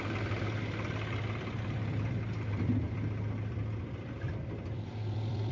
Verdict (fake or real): fake